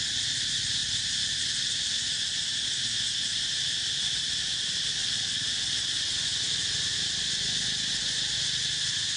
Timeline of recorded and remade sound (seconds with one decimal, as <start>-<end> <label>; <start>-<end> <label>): 0.0-9.2 recorded

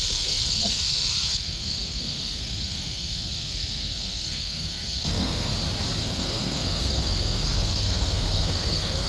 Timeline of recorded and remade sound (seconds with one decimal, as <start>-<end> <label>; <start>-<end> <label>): 0.0-5.5 remade; 5.5-6.0 recorded; 6.0-9.1 remade

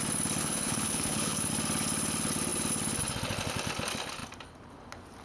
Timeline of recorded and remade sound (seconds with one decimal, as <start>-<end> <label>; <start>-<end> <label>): 0.0-0.4 recorded; 0.4-1.5 remade; 1.5-5.2 recorded

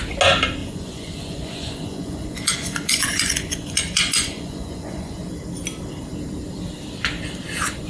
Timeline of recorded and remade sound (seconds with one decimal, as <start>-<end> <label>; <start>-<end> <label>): 0.0-0.6 recorded; 0.6-5.3 remade; 5.3-7.9 recorded

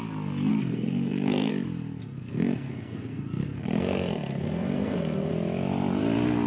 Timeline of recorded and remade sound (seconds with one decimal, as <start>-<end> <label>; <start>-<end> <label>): 0.0-0.5 recorded; 0.5-1.5 remade; 1.5-2.0 recorded; 2.0-5.3 remade; 5.3-6.5 recorded

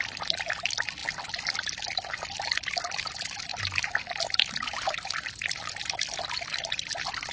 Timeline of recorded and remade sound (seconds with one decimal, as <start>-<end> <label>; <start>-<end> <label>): 0.0-7.3 recorded